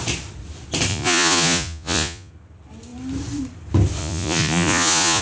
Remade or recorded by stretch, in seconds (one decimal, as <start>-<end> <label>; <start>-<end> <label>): 0.0-0.9 recorded; 0.9-2.3 remade; 2.3-4.0 recorded; 4.0-5.2 remade